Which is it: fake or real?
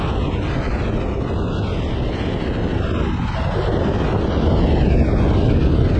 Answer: real